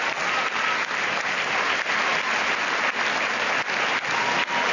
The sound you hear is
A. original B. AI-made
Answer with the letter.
A